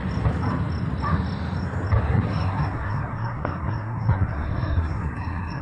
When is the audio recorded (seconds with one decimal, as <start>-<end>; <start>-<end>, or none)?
0.0-2.1